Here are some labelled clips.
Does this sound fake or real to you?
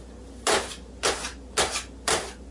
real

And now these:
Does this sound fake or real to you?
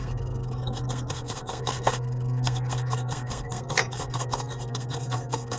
fake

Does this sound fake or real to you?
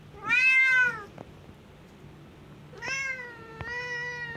real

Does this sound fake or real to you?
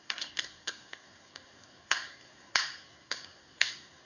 fake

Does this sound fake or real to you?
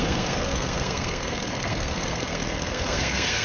fake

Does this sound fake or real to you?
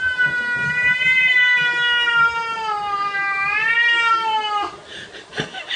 real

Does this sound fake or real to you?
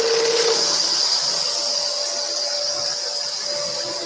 real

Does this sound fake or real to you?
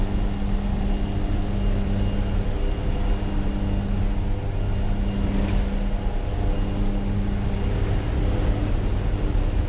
real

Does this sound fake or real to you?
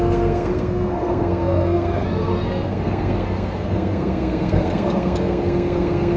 fake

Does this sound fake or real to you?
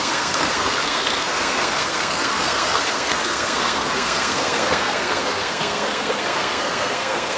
fake